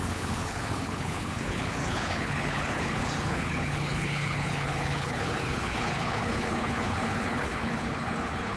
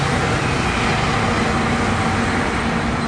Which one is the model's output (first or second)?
first